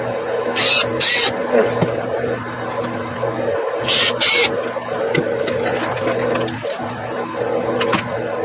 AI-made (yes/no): no